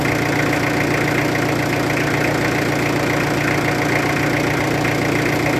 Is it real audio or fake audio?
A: real